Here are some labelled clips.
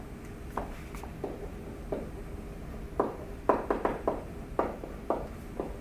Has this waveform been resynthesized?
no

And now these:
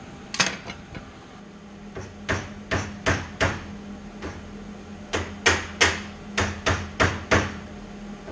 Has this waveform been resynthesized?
no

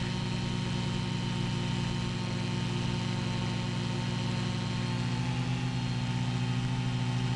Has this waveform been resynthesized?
no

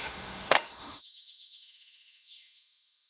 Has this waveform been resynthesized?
yes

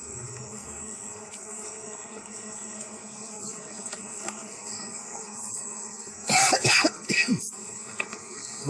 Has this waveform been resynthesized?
yes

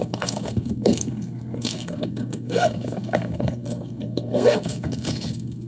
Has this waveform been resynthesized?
yes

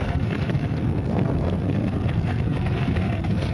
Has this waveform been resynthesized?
yes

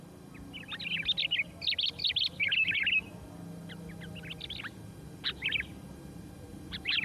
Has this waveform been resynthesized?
no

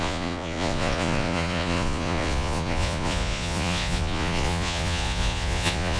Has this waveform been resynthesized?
yes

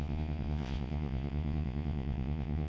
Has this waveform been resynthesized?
yes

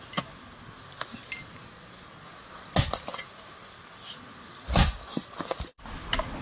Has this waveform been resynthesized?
no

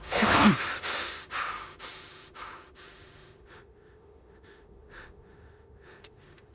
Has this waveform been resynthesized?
yes